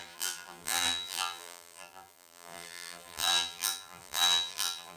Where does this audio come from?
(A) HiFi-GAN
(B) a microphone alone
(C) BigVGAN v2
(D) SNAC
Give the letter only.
C